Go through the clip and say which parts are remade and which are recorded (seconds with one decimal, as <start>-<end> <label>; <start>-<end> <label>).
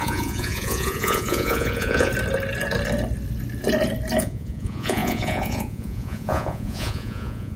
0.0-2.1 remade; 2.1-4.2 recorded; 4.2-7.6 remade